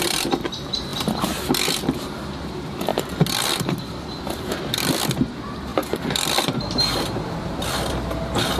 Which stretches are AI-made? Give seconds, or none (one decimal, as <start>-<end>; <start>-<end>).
0.0-8.6